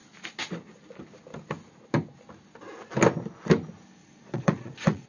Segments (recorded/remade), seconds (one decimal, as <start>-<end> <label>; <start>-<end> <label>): 0.0-4.0 recorded; 4.0-5.1 remade